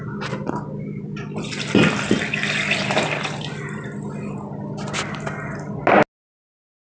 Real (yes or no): yes